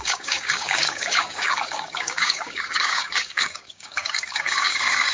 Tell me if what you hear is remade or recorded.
remade